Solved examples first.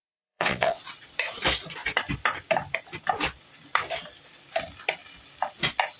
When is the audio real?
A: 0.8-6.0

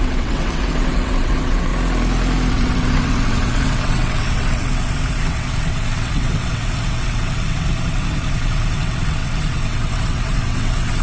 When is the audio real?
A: 1.7-2.5

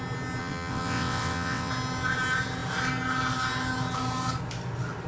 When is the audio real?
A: 0.0-0.4; 1.7-5.1

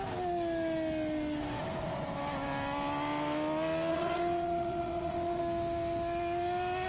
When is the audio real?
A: 0.0-3.9; 5.4-6.9